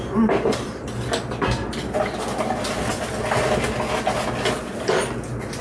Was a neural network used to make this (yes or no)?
no